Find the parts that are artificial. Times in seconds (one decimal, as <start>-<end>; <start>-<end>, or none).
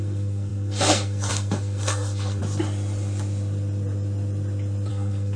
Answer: 0.0-2.4; 4.9-5.4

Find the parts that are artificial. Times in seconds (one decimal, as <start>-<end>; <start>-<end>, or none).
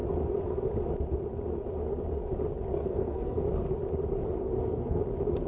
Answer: 2.7-3.4; 4.4-5.0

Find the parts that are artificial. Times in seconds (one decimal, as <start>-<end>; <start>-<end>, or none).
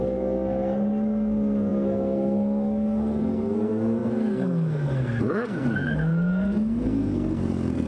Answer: 0.0-7.9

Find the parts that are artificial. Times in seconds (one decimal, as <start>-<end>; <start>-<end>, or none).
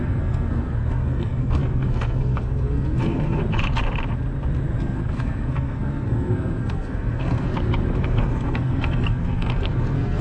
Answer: 0.0-3.4; 4.8-7.5; 8.0-10.2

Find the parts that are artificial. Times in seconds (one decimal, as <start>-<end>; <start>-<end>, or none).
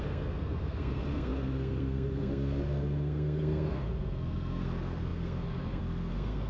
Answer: 0.0-6.5